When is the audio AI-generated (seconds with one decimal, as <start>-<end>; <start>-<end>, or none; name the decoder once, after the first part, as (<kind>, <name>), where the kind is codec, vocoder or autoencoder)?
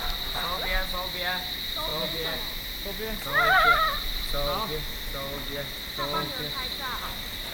1.9-2.4 (vocoder, Vocos)